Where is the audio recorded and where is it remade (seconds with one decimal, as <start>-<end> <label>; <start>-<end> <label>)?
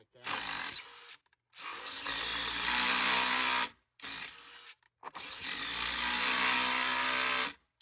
0.0-7.8 recorded